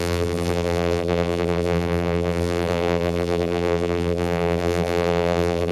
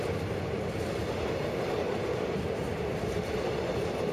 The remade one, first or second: first